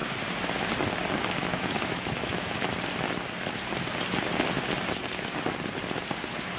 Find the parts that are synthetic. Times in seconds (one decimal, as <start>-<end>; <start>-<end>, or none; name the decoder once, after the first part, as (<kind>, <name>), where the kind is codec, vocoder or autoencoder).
1.4-2.7 (autoencoder, DAC-VAE)